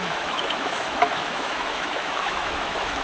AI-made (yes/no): yes